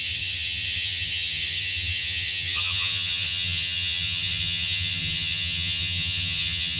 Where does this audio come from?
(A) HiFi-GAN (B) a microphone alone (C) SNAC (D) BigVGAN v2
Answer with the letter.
A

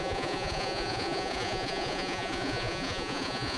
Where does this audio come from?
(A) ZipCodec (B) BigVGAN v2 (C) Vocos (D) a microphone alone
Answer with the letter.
C